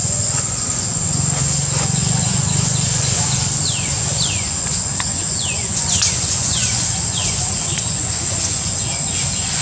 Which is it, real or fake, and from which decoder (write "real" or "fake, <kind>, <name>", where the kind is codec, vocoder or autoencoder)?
fake, vocoder, Vocos